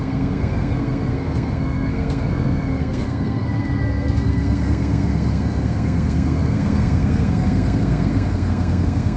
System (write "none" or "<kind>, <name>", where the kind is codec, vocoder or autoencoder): codec, SNAC